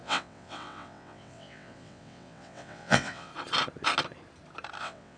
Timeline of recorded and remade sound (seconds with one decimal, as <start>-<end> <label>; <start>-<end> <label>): 0.0-3.3 remade; 3.3-4.8 recorded; 4.8-5.2 remade